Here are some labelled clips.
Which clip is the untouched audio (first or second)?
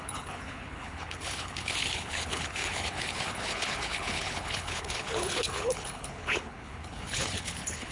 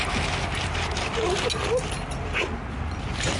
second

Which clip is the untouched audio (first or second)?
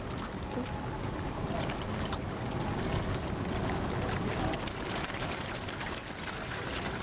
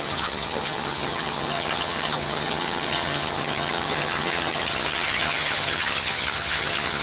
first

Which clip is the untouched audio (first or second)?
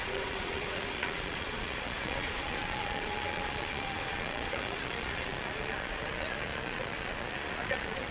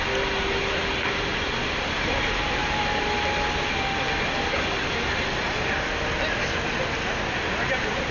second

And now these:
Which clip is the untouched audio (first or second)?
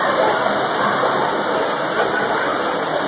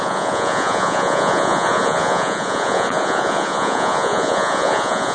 first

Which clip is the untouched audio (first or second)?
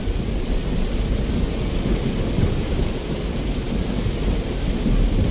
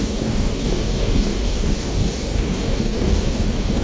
first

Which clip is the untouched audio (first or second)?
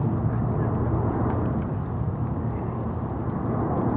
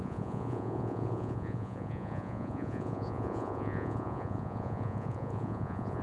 first